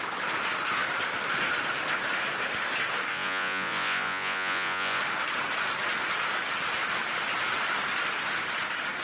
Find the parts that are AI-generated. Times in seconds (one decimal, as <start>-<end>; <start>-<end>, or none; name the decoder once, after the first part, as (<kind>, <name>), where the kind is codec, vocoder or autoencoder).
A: 3.1-5.0 (vocoder, Vocos)